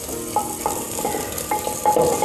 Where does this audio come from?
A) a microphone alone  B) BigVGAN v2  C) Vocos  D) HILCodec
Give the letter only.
A